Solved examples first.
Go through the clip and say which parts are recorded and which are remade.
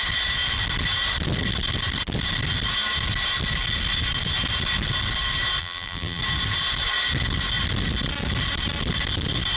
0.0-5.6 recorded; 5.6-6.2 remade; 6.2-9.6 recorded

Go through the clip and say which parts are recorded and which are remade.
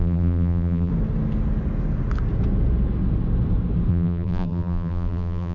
0.0-0.9 remade; 0.9-3.9 recorded; 3.9-5.5 remade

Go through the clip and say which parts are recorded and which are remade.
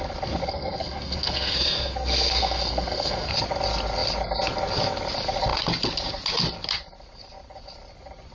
0.0-0.4 recorded; 0.4-3.3 remade; 3.3-8.3 recorded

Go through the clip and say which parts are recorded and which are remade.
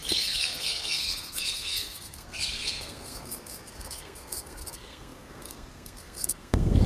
0.0-6.9 remade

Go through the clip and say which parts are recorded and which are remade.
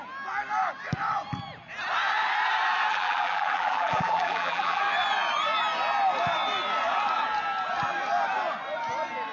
0.0-2.9 recorded; 2.9-4.8 remade; 4.8-9.3 recorded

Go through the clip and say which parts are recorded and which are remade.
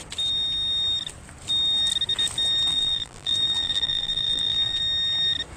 0.0-2.7 recorded; 2.7-4.8 remade; 4.8-5.6 recorded